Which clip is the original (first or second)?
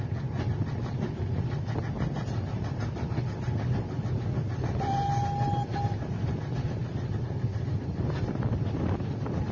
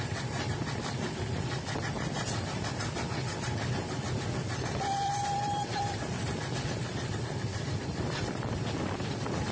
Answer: first